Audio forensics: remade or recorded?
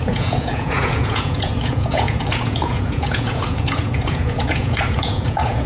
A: remade